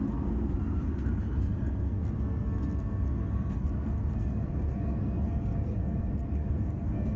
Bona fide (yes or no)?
no